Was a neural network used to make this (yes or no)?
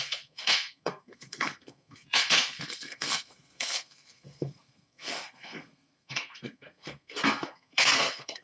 yes